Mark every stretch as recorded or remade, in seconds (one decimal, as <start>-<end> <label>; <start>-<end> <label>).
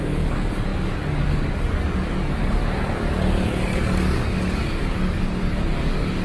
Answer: 0.0-6.2 remade